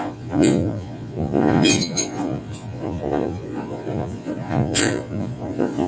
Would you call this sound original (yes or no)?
no